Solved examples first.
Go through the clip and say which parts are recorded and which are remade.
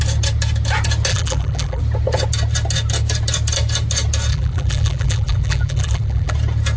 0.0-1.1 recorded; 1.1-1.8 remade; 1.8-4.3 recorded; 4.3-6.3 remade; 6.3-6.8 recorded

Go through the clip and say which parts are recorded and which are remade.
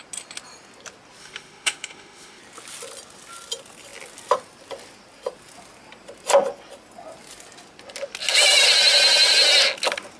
0.0-1.2 recorded; 1.2-2.4 remade; 2.4-10.2 recorded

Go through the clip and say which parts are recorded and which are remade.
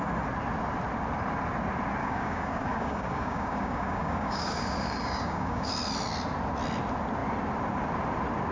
0.0-2.0 recorded; 2.0-5.7 remade; 5.7-8.5 recorded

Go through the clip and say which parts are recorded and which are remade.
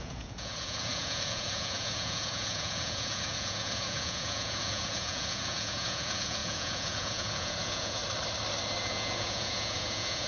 0.0-8.0 remade; 8.0-8.8 recorded; 8.8-10.3 remade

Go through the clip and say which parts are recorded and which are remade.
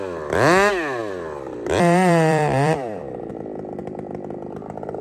0.0-1.0 recorded; 1.0-3.3 remade; 3.3-3.8 recorded; 3.8-5.0 remade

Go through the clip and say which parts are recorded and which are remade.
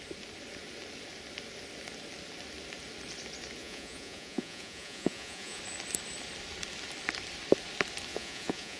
0.0-3.6 recorded; 3.6-5.6 remade; 5.6-8.1 recorded; 8.1-8.8 remade